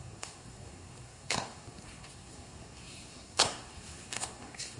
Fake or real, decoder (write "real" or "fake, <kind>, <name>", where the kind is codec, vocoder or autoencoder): fake, codec, SNAC